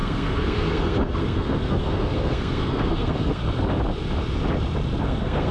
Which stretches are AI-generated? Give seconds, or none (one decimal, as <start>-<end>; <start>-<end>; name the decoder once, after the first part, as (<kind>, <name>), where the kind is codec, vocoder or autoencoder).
0.0-3.4 (codec, SNAC); 5.0-5.5

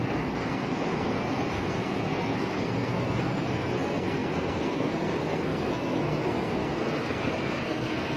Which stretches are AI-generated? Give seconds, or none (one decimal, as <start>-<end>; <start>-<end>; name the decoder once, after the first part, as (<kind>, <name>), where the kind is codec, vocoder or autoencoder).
0.0-8.2 (codec, SNAC)

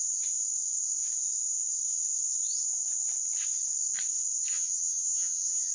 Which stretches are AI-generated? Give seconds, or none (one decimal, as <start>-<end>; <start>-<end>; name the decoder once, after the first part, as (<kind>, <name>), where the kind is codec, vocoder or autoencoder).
4.5-5.7 (vocoder, HiFi-GAN)

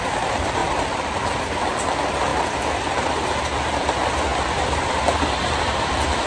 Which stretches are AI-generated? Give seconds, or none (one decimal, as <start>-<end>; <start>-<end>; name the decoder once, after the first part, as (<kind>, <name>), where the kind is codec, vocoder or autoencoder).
0.6-1.8 (vocoder, BigVGAN v2); 4.3-5.2

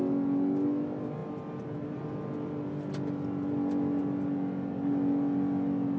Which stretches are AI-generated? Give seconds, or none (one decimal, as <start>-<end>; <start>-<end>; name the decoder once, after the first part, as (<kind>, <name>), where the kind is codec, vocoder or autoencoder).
none

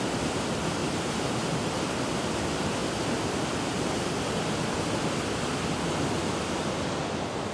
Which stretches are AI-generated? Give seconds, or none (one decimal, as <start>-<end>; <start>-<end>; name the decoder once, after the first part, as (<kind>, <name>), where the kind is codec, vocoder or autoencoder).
0.8-1.8 (vocoder, BigVGAN v2)